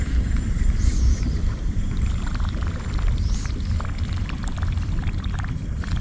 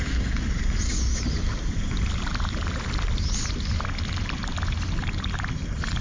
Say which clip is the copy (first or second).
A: first